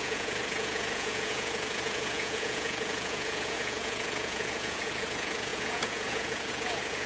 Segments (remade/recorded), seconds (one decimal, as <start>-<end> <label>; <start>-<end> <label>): 0.0-7.1 remade